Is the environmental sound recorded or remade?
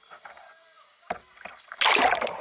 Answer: recorded